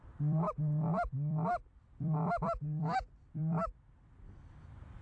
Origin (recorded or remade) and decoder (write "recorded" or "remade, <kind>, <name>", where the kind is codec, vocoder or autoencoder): remade, vocoder, BigVGAN v2